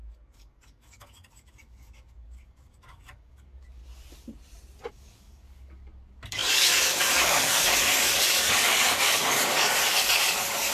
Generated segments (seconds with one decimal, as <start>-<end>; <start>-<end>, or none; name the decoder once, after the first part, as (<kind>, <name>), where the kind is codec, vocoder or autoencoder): 0.0-3.8 (codec, DAC); 4.9-10.7